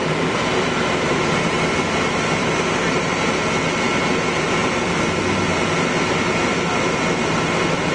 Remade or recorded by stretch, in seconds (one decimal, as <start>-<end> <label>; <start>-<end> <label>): 0.0-1.6 remade; 1.6-2.4 recorded; 2.4-3.1 remade; 3.1-7.9 recorded